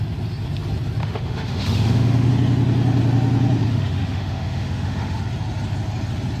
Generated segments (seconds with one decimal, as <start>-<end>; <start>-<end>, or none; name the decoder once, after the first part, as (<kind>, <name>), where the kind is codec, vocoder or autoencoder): 1.0-2.3 (autoencoder, DAC-VAE); 3.7-5.2